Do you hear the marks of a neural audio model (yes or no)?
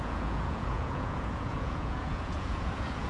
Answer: yes